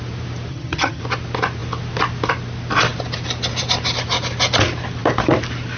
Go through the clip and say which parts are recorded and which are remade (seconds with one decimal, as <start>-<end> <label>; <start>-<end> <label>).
0.0-0.5 recorded; 0.5-1.0 remade; 1.0-5.8 recorded